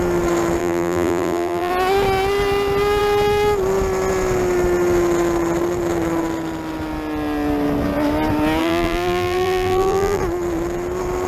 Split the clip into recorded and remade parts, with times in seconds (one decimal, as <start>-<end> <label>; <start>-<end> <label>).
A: 0.0-0.6 recorded; 0.6-1.7 remade; 1.7-8.6 recorded; 8.6-10.2 remade; 10.2-11.3 recorded